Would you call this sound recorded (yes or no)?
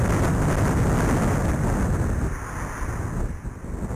yes